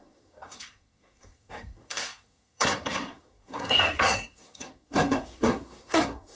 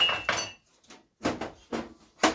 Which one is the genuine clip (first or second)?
second